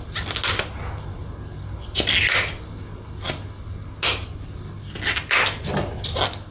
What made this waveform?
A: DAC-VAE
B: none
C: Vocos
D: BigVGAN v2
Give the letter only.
B